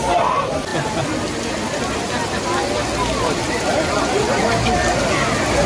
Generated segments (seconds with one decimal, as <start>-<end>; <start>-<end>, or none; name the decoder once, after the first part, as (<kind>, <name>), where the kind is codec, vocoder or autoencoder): none